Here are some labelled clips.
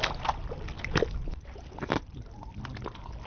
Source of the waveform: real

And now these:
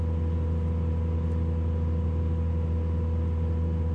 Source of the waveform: real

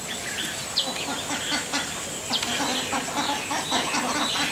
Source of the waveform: real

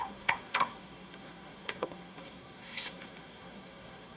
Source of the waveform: fake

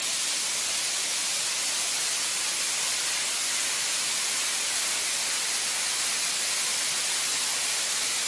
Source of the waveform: real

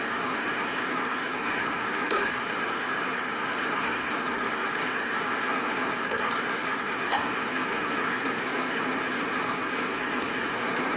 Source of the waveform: fake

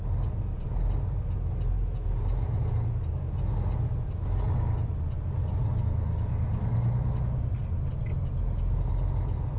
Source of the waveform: real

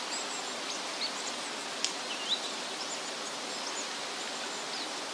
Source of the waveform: real